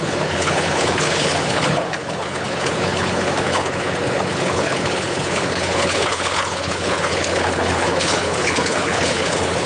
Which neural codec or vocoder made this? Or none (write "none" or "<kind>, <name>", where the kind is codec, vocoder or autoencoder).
codec, HILCodec